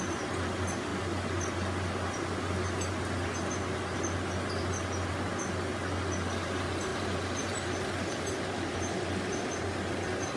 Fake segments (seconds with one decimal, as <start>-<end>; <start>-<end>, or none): none